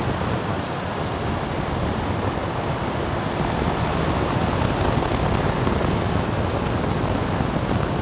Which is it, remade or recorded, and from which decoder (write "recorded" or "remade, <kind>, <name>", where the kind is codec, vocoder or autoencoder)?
recorded